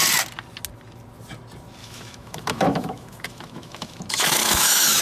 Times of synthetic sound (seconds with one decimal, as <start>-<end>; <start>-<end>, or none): 1.8-5.0